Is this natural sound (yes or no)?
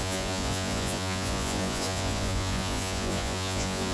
no